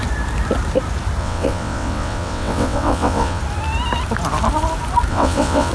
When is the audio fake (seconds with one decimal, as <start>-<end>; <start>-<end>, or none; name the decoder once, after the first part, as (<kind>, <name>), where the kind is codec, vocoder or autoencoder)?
1.2-3.4 (vocoder, WaveNeXt); 5.1-5.7

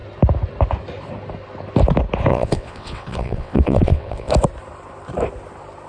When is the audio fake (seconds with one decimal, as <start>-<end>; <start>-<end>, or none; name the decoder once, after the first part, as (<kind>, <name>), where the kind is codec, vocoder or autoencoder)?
2.3-4.3 (vocoder, WaveNeXt)

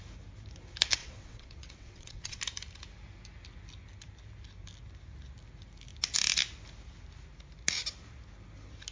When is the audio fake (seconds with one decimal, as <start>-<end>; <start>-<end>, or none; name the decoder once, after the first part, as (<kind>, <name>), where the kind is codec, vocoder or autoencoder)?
1.0-2.4 (vocoder, WaveNeXt)

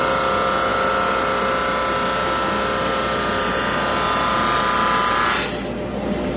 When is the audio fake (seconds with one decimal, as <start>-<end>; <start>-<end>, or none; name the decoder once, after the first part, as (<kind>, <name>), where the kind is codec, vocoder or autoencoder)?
none

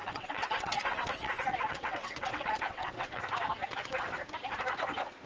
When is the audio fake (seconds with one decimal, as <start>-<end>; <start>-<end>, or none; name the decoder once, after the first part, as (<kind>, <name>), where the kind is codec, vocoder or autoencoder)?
0.0-3.2 (vocoder, WaveNeXt)

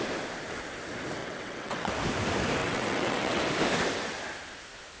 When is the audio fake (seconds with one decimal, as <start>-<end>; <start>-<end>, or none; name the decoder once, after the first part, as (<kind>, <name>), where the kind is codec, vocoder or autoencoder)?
1.2-1.9 (vocoder, WaveNeXt); 2.6-3.4

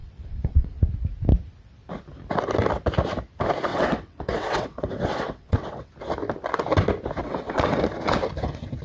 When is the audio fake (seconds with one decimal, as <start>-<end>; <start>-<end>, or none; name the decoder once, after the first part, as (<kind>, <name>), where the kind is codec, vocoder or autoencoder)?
0.0-0.8 (vocoder, WaveNeXt); 3.7-5.9; 7.2-7.8

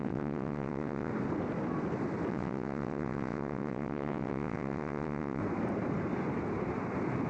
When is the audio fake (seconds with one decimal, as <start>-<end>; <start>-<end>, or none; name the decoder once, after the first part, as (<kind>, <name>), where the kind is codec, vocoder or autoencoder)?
0.0-1.1 (vocoder, WaveNeXt); 2.3-5.4